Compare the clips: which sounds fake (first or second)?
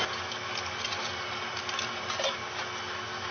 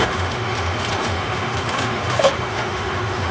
second